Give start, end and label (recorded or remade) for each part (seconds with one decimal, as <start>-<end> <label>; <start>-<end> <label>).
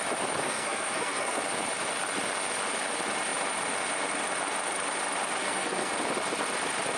0.0-0.4 recorded; 0.4-1.4 remade; 1.4-5.4 recorded; 5.4-5.9 remade; 5.9-7.0 recorded